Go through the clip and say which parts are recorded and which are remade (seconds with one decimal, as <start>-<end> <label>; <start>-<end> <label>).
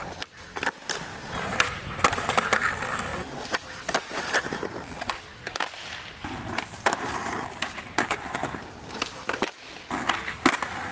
0.0-1.1 recorded; 1.1-1.9 remade; 1.9-5.3 recorded; 5.3-9.7 remade; 9.7-10.9 recorded